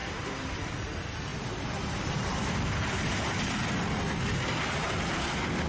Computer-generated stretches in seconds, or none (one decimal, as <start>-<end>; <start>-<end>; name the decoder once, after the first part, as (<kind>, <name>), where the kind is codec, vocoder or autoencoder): 0.0-0.6 (vocoder, BigVGAN v2); 1.3-2.4